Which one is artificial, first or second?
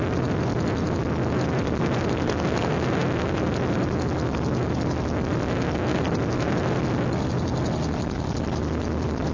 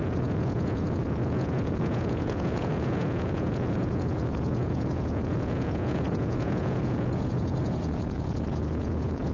second